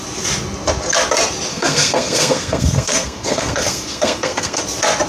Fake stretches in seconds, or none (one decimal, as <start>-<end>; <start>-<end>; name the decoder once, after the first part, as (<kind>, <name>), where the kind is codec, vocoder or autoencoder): 1.5-4.6 (codec, SNAC)